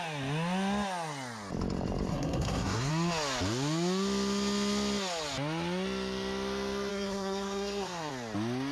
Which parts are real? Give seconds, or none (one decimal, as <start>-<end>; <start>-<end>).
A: 0.0-2.1; 2.9-6.9; 8.1-8.7